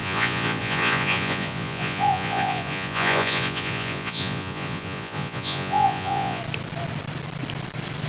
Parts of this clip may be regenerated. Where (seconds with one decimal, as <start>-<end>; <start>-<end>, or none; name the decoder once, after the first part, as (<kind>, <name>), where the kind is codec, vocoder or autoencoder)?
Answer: 0.0-6.4 (vocoder, Vocos)